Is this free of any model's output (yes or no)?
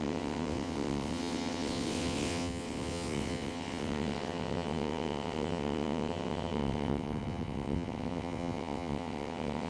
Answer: no